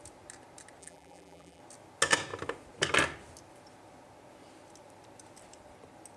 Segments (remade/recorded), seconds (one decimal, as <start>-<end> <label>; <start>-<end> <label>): 0.0-0.8 recorded; 0.8-1.6 remade; 1.6-6.2 recorded

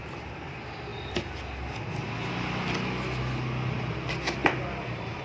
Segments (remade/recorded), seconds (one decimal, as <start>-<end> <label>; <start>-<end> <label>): 0.0-5.2 recorded

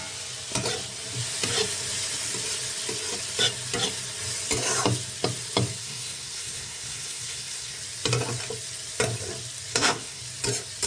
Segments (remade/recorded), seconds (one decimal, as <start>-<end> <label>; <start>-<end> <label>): 0.0-5.8 recorded; 5.8-7.8 remade; 7.8-9.7 recorded; 9.7-10.2 remade; 10.2-10.9 recorded

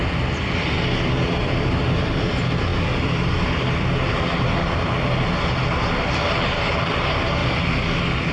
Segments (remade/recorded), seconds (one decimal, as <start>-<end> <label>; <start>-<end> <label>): 0.0-2.7 remade; 2.7-3.3 recorded; 3.3-7.4 remade; 7.4-8.3 recorded

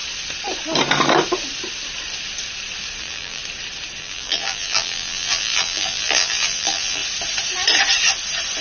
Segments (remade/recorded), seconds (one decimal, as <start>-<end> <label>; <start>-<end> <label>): 0.0-3.0 recorded; 3.0-3.4 remade; 3.4-4.0 recorded; 4.0-7.0 remade; 7.0-8.6 recorded

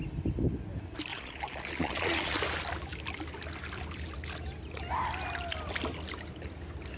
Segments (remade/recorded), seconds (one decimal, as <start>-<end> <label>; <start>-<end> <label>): 0.0-1.1 recorded; 1.1-2.4 remade; 2.4-7.0 recorded

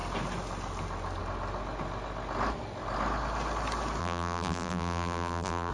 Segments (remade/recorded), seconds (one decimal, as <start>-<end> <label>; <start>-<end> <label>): 0.0-4.0 recorded; 4.0-5.7 remade

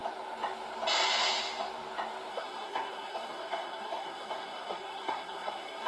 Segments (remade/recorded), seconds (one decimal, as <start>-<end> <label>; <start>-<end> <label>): 0.0-2.3 recorded; 2.3-5.9 remade